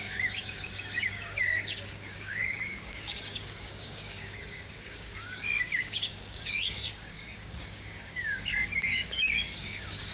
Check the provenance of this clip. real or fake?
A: fake